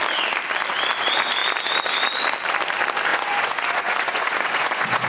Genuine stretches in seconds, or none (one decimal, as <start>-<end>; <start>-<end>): 0.0-3.1

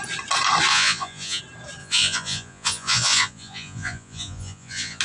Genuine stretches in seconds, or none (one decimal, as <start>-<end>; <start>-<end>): 0.0-0.7; 1.4-1.8

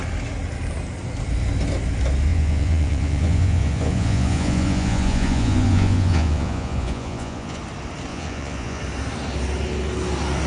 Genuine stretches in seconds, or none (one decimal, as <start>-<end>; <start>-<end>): 0.0-2.3; 7.6-8.1; 8.8-10.5

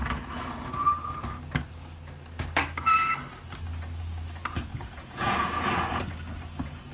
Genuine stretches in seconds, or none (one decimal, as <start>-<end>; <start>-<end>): 0.0-4.7; 6.0-6.9